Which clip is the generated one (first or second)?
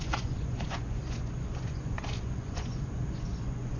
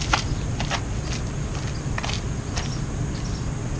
first